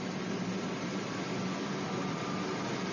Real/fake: real